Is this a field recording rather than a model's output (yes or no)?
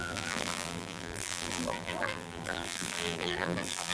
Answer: no